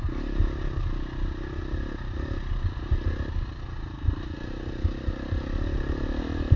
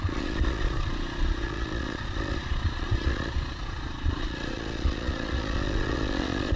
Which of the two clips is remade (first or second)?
second